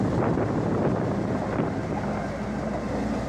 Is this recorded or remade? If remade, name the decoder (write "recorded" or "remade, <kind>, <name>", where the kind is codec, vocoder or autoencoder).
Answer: recorded